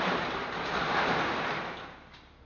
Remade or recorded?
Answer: remade